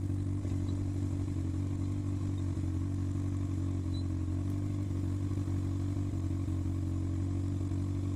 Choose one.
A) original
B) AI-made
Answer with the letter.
A